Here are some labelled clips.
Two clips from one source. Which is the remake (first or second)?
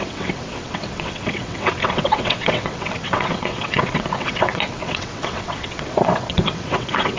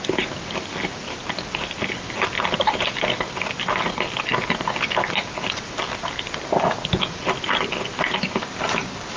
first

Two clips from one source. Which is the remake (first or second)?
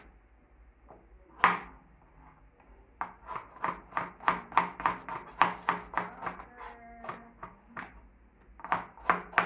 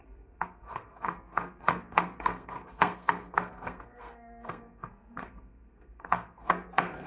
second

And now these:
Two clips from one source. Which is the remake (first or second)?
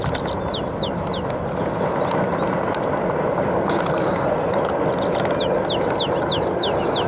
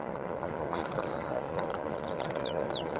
second